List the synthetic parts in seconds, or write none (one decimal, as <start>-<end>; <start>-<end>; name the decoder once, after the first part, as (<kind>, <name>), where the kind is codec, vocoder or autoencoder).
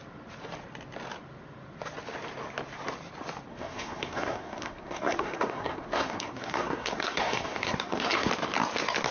3.5-8.3 (codec, SNAC)